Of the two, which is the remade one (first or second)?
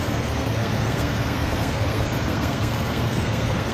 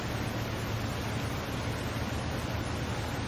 first